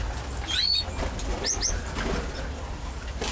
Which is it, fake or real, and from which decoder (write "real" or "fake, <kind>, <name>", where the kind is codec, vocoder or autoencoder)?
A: real